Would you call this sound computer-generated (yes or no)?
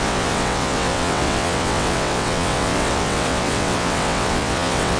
yes